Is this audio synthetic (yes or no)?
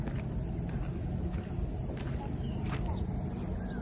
no